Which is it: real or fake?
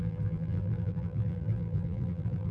fake